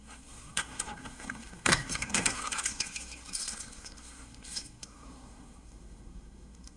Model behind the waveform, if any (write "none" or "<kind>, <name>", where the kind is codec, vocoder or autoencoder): codec, SNAC